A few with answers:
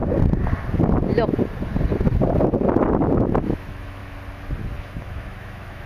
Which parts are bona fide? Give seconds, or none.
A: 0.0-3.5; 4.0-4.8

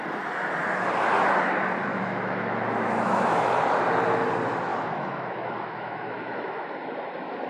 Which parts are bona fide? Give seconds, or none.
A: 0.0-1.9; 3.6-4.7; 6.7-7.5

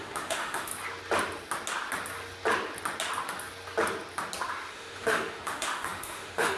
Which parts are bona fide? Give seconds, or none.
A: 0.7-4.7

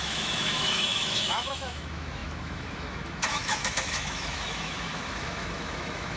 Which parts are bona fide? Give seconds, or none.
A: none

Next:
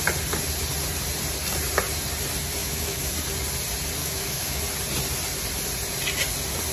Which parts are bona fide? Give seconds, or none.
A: 0.0-2.6; 3.1-4.0; 4.6-6.7